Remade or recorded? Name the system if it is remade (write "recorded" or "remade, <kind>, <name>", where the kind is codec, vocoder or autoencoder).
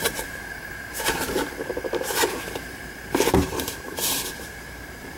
remade, vocoder, BigVGAN v2